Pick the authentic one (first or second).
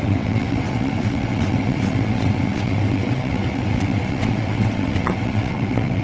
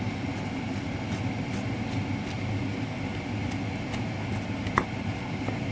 second